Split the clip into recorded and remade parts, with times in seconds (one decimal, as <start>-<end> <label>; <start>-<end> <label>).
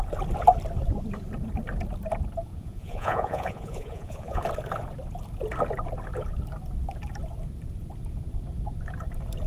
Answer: 0.0-2.5 recorded; 2.5-4.4 remade; 4.4-9.5 recorded